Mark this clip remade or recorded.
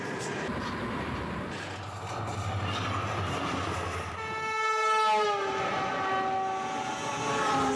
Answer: recorded